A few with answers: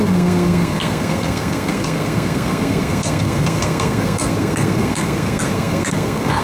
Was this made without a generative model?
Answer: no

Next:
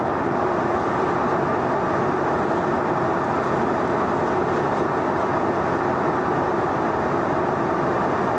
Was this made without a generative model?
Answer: yes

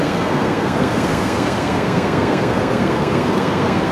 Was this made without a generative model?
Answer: no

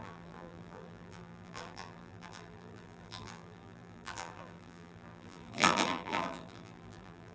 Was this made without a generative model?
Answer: no